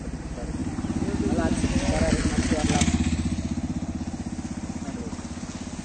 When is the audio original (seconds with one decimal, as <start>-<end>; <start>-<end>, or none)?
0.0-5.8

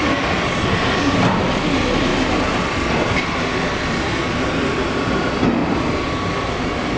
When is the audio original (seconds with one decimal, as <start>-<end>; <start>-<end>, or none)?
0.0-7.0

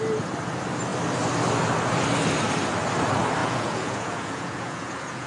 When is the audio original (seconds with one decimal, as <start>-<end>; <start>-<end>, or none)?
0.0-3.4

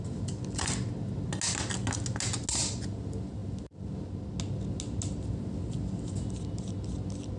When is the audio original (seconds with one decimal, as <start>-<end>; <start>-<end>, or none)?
0.0-7.4

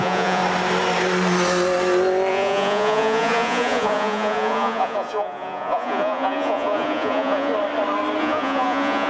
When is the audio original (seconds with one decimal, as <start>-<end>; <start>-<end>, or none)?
0.4-2.3; 7.5-8.2

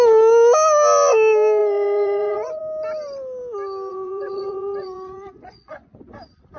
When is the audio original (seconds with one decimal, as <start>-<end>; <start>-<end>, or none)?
0.0-1.6; 2.6-3.9; 6.0-6.6

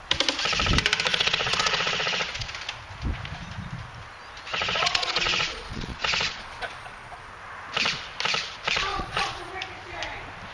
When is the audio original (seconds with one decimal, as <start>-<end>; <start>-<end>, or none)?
0.0-1.1; 2.5-4.5; 7.3-8.9; 9.5-10.5

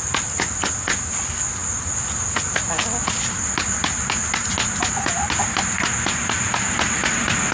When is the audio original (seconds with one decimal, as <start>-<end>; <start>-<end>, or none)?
0.0-7.5